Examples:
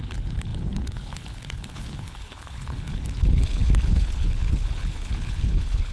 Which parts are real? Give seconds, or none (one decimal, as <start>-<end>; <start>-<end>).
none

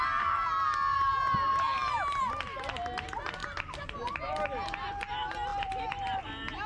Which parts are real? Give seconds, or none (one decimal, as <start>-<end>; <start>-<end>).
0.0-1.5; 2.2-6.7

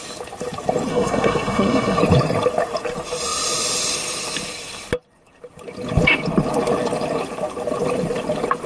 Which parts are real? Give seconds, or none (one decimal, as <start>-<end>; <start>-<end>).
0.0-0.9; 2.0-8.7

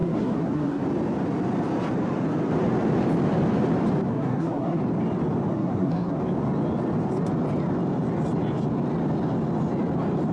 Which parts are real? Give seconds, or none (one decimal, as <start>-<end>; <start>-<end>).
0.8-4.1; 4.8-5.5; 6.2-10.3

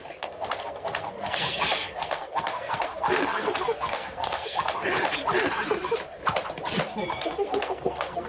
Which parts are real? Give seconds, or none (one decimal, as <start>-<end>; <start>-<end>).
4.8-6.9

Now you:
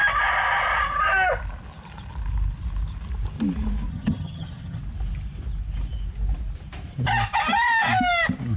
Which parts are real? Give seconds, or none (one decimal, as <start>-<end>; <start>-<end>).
0.0-3.9; 4.8-8.6

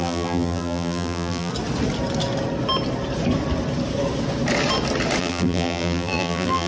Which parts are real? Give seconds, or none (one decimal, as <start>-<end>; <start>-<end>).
1.5-5.2

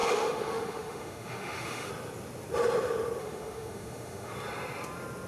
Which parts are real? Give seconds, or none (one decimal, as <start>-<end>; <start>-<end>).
1.9-3.2; 4.3-5.3